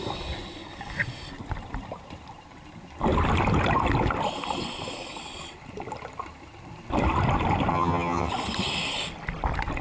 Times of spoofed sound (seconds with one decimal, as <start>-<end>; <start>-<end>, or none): 7.7-8.3